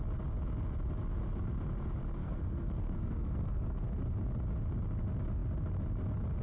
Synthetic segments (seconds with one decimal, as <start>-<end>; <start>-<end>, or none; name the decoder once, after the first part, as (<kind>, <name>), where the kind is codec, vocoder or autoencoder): 2.2-4.0 (codec, SNAC)